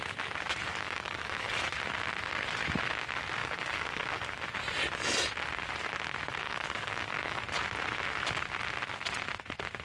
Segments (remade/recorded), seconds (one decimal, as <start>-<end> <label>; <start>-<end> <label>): 0.0-0.7 recorded; 0.7-1.5 remade; 1.5-3.4 recorded; 3.4-4.4 remade; 4.4-6.4 recorded; 6.4-7.4 remade; 7.4-9.8 recorded